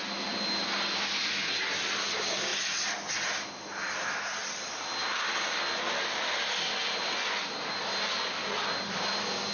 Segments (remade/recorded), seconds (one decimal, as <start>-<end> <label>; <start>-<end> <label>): 0.0-1.2 recorded; 1.2-2.0 remade; 2.0-2.5 recorded; 2.5-3.1 remade; 3.1-5.0 recorded; 5.0-5.6 remade; 5.6-9.5 recorded